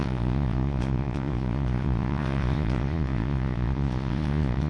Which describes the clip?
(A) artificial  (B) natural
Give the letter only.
A